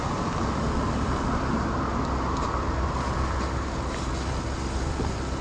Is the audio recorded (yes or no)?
yes